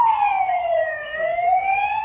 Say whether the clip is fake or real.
fake